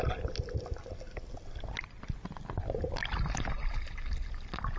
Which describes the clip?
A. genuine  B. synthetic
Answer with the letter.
A